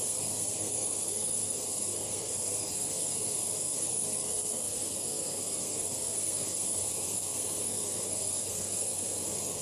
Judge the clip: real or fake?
fake